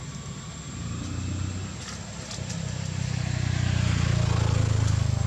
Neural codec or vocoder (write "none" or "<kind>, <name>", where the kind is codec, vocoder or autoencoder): none